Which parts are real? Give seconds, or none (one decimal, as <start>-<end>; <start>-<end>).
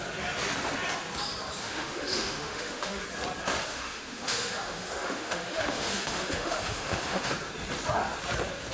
0.0-1.6; 3.0-3.7; 7.3-8.7